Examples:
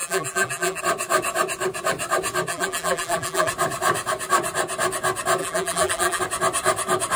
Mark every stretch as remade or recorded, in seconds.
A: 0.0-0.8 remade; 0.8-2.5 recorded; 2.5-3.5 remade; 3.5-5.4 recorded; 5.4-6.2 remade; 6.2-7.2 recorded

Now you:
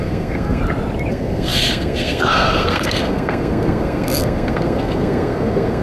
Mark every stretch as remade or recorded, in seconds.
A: 0.0-0.6 remade; 0.6-1.1 recorded; 1.1-5.8 remade